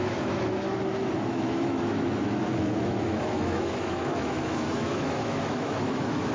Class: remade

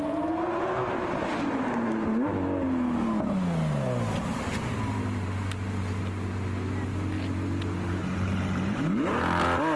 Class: recorded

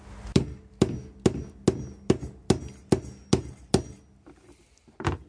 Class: recorded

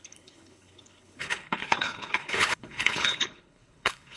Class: remade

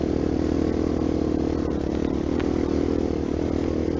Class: recorded